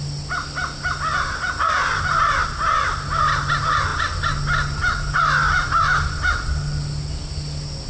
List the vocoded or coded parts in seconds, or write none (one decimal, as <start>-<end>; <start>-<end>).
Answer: none